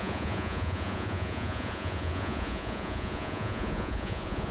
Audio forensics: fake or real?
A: fake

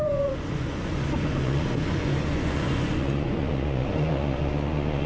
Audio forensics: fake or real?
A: fake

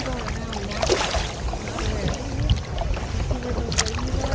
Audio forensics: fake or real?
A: real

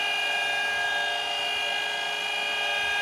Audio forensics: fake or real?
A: real